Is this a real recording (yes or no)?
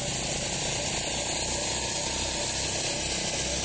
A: yes